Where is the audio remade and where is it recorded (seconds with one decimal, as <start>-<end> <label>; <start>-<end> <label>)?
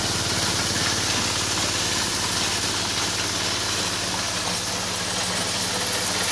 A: 0.0-6.3 recorded